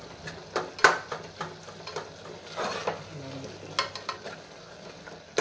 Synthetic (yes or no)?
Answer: no